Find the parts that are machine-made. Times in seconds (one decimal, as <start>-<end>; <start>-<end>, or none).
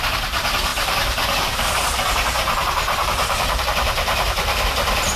0.0-5.2